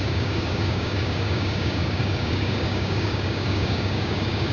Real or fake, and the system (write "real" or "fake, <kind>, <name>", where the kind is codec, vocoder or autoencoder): fake, codec, DAC